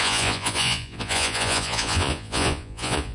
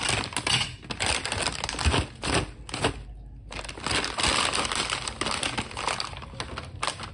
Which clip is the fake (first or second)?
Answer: first